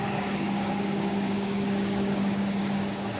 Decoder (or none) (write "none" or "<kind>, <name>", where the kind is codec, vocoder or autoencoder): codec, DAC